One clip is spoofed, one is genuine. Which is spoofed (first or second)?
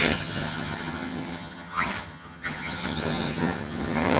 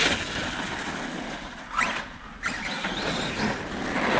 first